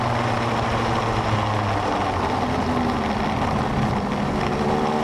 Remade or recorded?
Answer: recorded